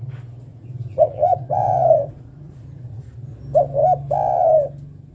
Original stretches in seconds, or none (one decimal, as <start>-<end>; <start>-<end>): 0.0-0.5; 3.0-5.1